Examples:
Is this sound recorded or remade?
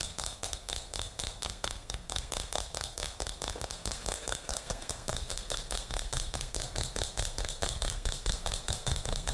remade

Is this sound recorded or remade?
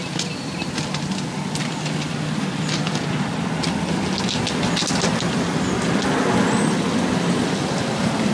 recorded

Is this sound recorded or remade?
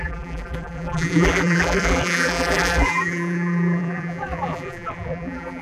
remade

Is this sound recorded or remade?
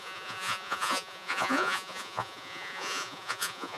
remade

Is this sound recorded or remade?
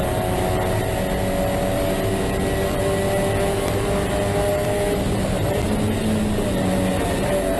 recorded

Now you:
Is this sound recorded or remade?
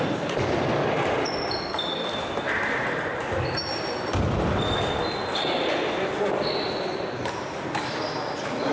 recorded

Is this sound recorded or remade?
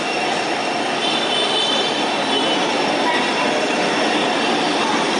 remade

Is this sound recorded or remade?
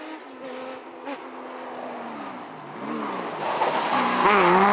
recorded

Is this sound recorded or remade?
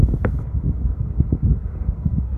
remade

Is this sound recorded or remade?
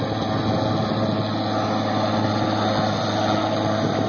recorded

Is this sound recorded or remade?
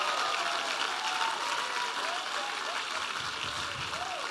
recorded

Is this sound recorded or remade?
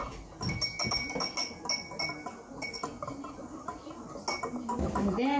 recorded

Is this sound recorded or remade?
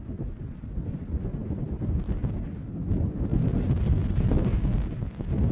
recorded